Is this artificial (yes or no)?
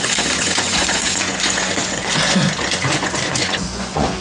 yes